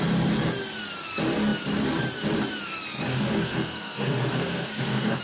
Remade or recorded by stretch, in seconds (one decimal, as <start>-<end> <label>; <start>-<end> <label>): 0.0-3.1 recorded; 3.1-5.2 remade